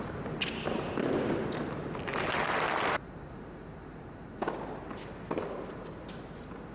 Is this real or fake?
real